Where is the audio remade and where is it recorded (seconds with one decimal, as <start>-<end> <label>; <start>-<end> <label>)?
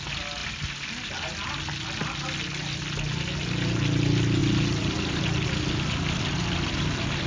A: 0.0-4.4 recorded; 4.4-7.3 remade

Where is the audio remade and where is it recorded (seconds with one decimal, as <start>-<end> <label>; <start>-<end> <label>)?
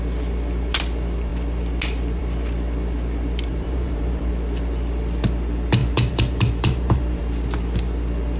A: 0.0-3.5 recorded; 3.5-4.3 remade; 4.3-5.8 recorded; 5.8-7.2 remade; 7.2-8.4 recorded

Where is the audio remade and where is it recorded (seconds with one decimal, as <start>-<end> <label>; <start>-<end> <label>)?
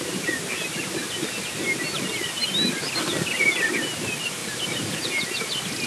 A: 0.0-2.4 recorded; 2.4-3.5 remade; 3.5-4.4 recorded; 4.4-5.9 remade